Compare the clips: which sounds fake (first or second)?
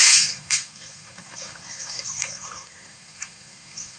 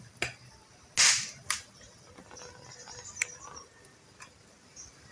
first